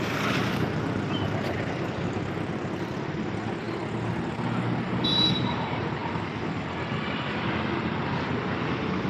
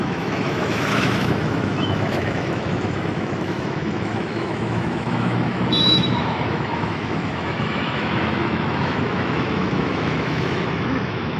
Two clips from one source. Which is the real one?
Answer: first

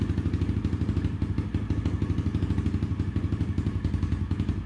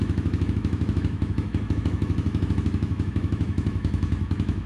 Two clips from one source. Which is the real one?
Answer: first